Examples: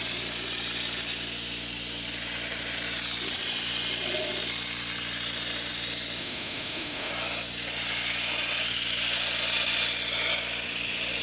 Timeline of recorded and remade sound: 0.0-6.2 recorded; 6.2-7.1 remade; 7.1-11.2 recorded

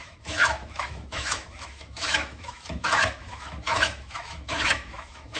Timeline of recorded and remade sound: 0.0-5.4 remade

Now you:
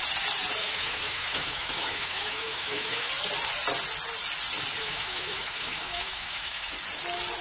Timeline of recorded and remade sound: 0.0-0.6 recorded; 0.6-3.1 remade; 3.1-4.8 recorded; 4.8-6.7 remade; 6.7-7.4 recorded